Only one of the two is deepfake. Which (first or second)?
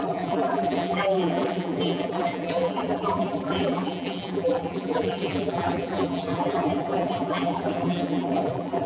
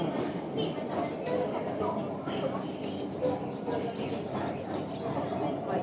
first